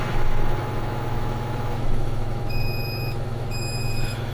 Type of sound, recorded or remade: remade